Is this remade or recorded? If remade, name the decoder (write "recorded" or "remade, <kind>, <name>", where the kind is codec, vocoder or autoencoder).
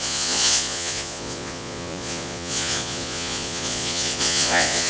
remade, vocoder, Vocos